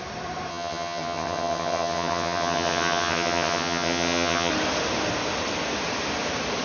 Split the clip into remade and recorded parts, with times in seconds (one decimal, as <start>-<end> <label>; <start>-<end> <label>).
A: 0.0-0.5 recorded; 0.5-4.5 remade; 4.5-6.6 recorded